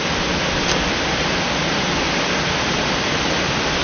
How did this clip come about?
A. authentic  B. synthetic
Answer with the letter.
A